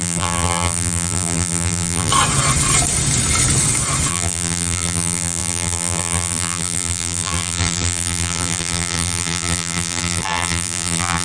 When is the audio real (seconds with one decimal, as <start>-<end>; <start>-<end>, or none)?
2.1-4.1